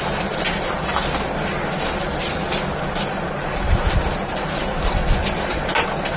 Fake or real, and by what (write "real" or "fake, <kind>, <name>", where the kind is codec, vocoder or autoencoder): real